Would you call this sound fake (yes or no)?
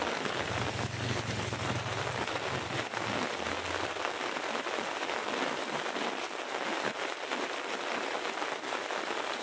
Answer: no